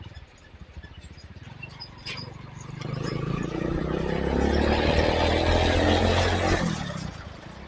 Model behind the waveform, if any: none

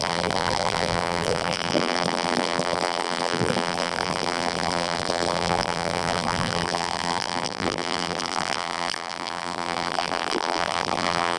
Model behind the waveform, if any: vocoder, BigVGAN v2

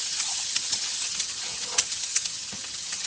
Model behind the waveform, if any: vocoder, HiFi-GAN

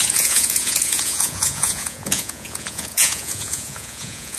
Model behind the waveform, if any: vocoder, Vocos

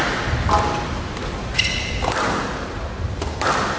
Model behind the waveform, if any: none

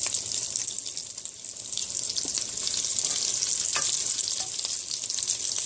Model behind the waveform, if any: none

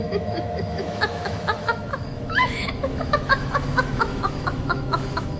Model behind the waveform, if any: autoencoder, DAC-VAE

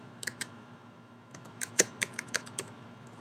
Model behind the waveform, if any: autoencoder, DAC-VAE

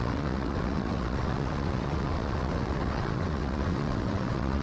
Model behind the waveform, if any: vocoder, WaveNeXt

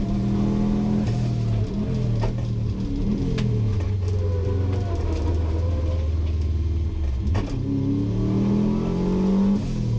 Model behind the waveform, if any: none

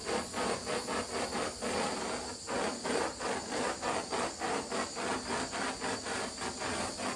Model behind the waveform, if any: none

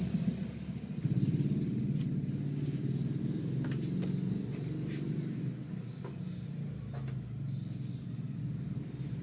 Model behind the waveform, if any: none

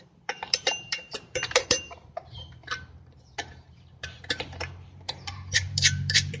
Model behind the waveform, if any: vocoder, BigVGAN v2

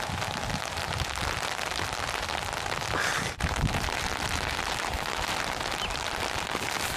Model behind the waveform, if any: none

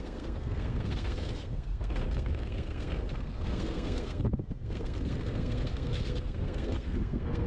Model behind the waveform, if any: codec, SNAC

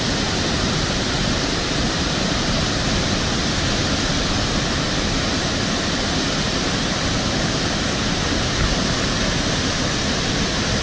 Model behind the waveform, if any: vocoder, BigVGAN v2